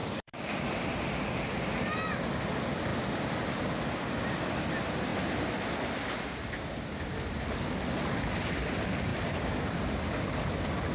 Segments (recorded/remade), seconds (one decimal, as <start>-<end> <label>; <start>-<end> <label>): 0.0-0.9 remade; 0.9-2.9 recorded; 2.9-3.6 remade; 3.6-9.1 recorded; 9.1-10.0 remade; 10.0-10.9 recorded